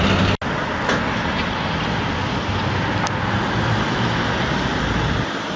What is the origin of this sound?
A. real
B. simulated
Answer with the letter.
A